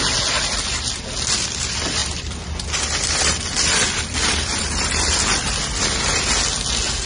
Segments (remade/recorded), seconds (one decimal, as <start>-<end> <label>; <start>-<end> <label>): 0.0-2.0 recorded; 2.0-6.3 remade; 6.3-7.1 recorded